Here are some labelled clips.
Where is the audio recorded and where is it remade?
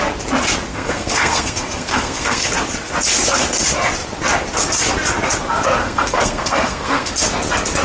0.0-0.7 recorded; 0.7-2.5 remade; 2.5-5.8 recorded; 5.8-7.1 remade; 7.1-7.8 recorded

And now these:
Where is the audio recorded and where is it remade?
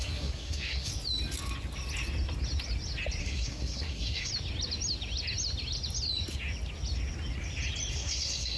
0.0-0.9 remade; 0.9-3.2 recorded; 3.2-4.3 remade; 4.3-7.9 recorded; 7.9-8.6 remade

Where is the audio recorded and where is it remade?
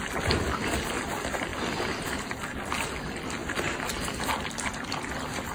0.0-5.5 recorded